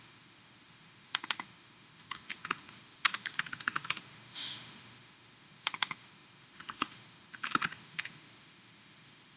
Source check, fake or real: fake